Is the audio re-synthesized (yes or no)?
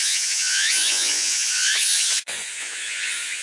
yes